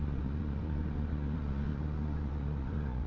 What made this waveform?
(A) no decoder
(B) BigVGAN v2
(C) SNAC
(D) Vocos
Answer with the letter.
D